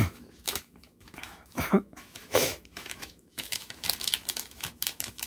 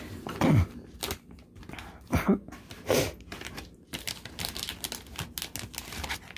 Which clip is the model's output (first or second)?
first